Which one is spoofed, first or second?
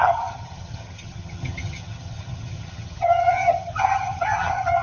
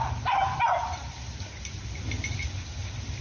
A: first